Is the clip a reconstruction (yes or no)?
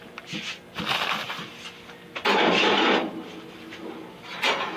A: no